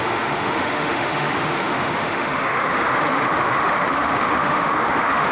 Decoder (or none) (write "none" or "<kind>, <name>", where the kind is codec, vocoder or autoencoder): autoencoder, DAC-VAE